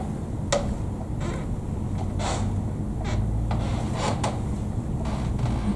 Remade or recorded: recorded